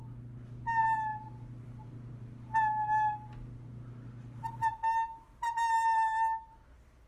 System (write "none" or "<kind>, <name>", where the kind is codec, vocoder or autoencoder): none